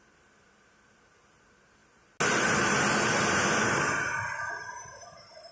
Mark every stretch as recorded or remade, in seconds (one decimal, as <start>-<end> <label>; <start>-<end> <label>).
0.0-5.5 recorded